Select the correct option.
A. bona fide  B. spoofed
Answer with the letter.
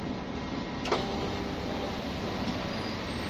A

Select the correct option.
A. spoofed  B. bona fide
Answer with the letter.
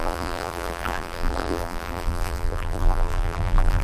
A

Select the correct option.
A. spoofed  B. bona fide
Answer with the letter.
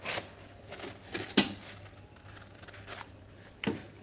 B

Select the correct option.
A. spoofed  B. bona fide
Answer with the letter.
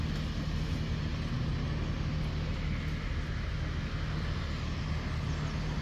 B